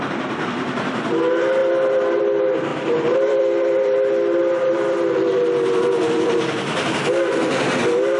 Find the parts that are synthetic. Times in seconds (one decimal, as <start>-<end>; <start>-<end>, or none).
2.7-3.4